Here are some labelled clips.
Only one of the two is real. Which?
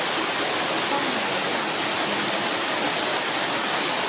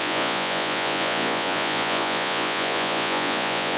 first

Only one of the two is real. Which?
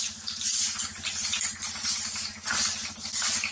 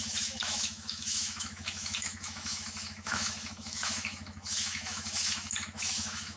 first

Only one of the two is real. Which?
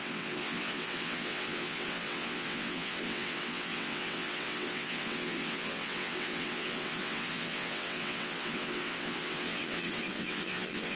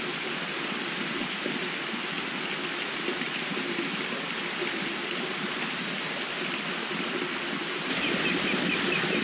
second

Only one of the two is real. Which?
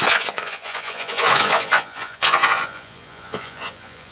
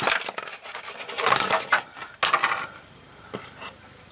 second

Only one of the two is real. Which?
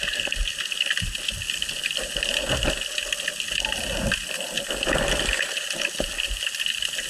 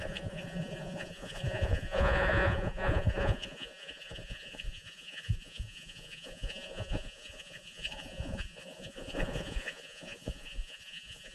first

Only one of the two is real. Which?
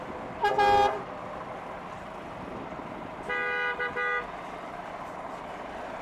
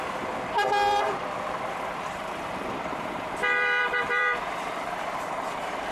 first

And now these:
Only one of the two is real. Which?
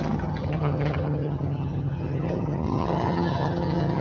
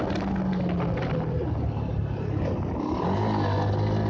second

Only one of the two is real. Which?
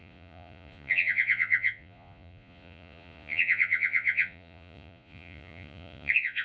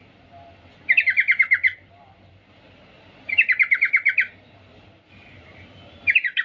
second